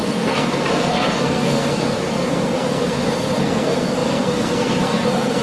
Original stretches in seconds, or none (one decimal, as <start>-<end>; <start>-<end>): none